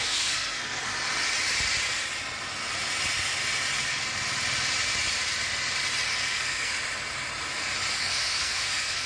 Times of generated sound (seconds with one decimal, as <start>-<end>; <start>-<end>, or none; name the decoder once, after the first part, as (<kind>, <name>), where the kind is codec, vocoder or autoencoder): 0.0-0.9 (codec, SNAC); 6.1-6.7; 7.9-9.1